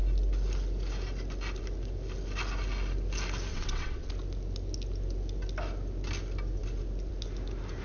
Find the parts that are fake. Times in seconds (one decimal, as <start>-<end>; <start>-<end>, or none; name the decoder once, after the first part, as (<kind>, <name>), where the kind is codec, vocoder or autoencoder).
3.5-4.1 (vocoder, WaveNeXt)